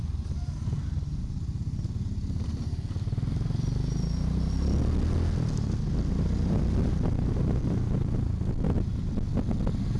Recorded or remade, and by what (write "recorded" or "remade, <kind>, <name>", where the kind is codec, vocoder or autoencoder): recorded